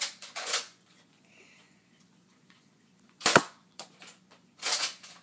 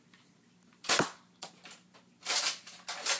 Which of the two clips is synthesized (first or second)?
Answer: first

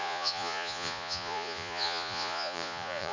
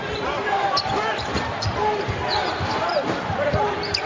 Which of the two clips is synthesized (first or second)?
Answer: first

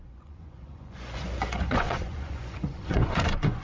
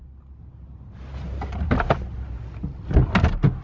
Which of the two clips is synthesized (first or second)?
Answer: first